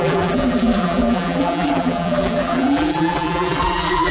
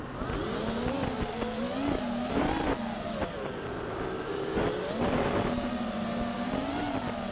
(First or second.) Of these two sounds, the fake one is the first